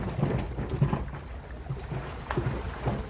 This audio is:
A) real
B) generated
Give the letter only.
A